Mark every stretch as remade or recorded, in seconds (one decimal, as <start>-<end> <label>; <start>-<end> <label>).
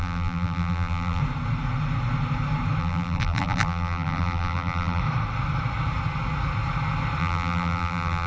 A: 0.0-1.2 remade; 1.2-2.8 recorded; 2.8-5.0 remade; 5.0-7.2 recorded; 7.2-8.3 remade